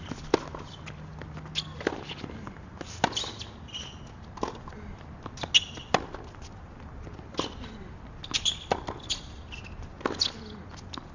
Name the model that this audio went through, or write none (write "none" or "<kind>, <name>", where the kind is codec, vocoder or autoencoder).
none